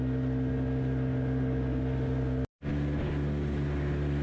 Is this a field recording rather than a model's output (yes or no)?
yes